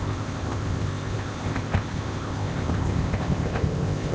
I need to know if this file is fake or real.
fake